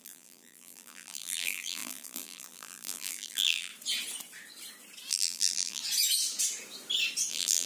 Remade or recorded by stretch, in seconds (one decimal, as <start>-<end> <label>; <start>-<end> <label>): 0.0-3.7 remade; 3.7-5.1 recorded; 5.1-5.8 remade; 5.8-7.3 recorded; 7.3-7.7 remade